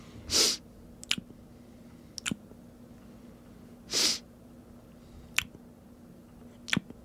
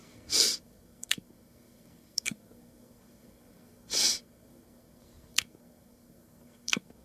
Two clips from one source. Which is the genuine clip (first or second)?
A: first